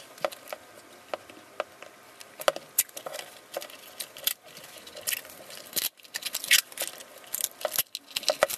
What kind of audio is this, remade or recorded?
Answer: recorded